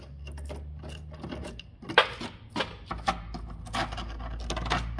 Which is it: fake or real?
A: real